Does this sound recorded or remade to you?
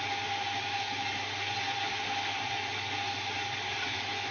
recorded